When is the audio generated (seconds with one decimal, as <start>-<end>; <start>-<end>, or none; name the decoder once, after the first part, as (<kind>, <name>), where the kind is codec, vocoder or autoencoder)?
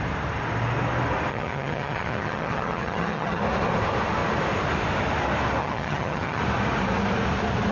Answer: 1.3-3.4 (vocoder, HiFi-GAN); 5.6-6.4